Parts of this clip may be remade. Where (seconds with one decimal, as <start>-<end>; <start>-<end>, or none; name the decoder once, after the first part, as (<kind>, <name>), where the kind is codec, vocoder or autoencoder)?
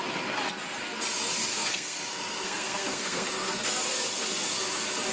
1.5-3.7 (codec, SNAC)